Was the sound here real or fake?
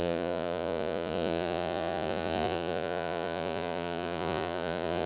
fake